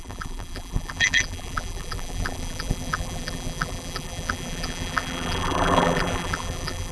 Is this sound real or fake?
fake